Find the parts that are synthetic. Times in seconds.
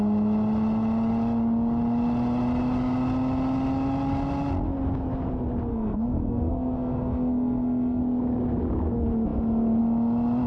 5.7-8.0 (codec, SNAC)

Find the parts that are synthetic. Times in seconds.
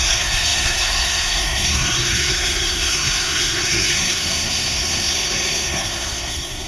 0.0-6.7 (codec, SNAC)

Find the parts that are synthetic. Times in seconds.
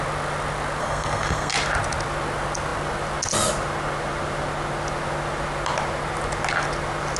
0.8-1.5 (codec, SNAC)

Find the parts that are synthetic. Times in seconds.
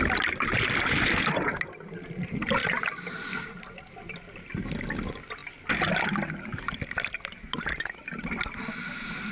none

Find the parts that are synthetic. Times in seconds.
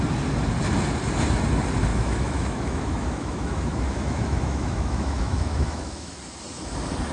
1.9-6.2 (autoencoder, DAC-VAE)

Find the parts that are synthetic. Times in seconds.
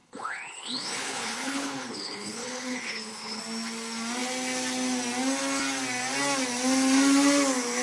0.0-3.4 (codec, HILCodec)